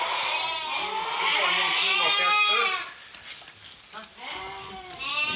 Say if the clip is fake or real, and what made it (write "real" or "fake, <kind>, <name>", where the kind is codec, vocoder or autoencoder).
real